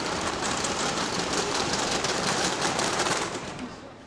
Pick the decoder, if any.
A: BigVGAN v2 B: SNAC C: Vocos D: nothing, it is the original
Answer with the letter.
A